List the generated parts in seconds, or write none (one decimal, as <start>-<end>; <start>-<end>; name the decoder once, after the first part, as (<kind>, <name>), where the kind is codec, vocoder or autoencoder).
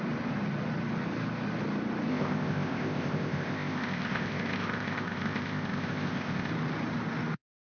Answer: 2.1-6.5 (codec, ZipCodec)